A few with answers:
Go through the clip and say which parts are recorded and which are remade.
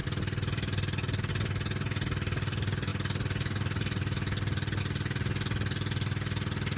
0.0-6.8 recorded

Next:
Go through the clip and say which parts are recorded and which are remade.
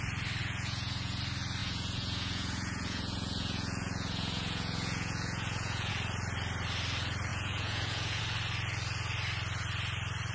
0.0-0.4 recorded; 0.4-1.2 remade; 1.2-1.6 recorded; 1.6-5.9 remade; 5.9-7.3 recorded; 7.3-8.2 remade; 8.2-10.3 recorded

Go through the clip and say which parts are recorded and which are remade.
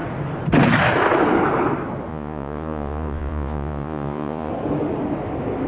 0.0-2.1 recorded; 2.1-4.5 remade; 4.5-5.7 recorded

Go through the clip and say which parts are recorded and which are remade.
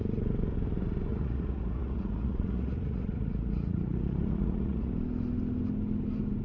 0.0-1.1 recorded; 1.1-4.9 remade; 4.9-6.4 recorded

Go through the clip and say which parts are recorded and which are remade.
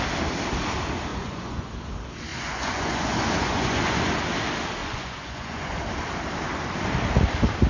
0.0-1.1 recorded; 1.1-1.7 remade; 1.7-2.3 recorded; 2.3-4.1 remade; 4.1-4.8 recorded; 4.8-5.8 remade; 5.8-7.7 recorded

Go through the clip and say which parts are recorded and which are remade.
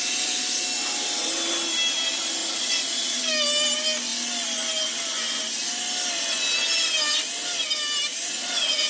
0.0-2.4 recorded; 2.4-3.2 remade; 3.2-8.1 recorded; 8.1-8.9 remade